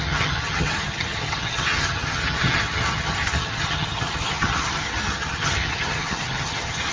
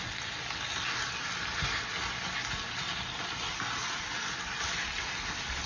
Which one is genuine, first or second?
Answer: second